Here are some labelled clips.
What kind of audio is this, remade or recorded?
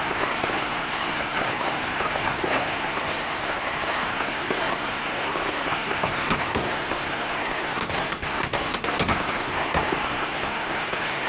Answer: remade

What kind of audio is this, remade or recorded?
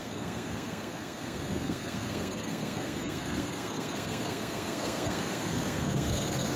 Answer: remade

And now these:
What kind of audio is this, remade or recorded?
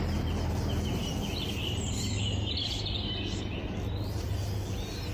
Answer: recorded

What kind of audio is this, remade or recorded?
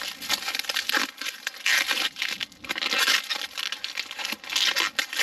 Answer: recorded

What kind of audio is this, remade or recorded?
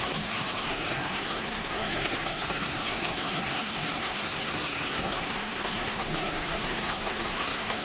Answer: remade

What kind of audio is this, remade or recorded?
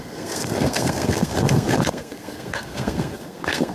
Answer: remade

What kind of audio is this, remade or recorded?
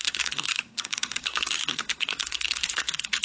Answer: remade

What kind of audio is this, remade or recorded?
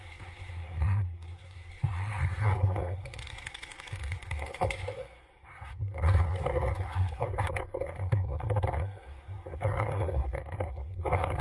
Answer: remade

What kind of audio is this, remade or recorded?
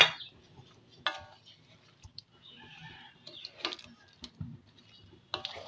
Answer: recorded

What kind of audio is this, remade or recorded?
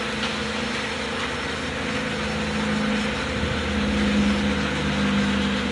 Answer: recorded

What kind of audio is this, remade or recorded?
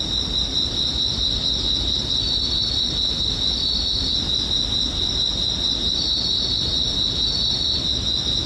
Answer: recorded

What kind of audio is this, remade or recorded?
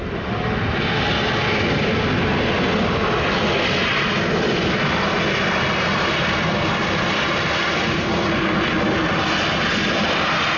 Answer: recorded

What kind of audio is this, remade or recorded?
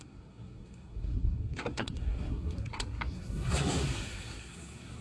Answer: remade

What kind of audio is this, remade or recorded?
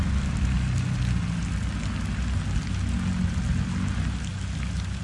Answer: recorded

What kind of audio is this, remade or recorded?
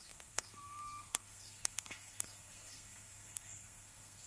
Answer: remade